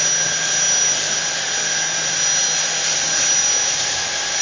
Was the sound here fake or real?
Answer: real